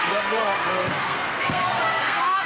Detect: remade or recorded remade